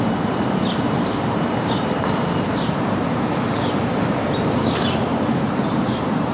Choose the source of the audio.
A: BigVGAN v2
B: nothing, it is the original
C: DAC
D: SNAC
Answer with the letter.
A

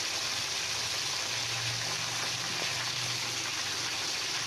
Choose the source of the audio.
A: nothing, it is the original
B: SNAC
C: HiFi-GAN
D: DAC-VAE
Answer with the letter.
A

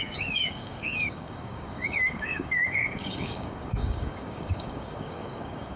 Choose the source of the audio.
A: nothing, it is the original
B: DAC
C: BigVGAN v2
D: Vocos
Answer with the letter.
B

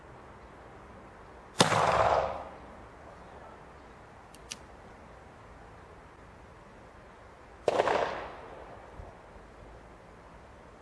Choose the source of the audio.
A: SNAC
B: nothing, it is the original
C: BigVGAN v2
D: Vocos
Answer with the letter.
B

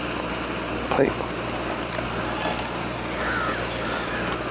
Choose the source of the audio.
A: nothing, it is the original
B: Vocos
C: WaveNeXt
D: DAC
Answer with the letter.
A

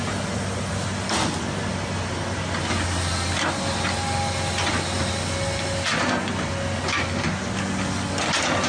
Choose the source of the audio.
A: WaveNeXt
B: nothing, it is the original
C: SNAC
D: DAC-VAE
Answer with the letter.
B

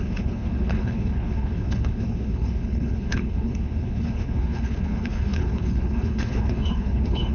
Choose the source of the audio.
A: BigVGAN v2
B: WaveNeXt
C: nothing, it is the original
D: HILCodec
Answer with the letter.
D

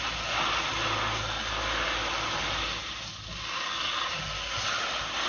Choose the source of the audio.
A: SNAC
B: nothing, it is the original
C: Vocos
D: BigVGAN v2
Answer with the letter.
B